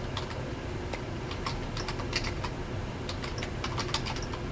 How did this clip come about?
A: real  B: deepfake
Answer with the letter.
A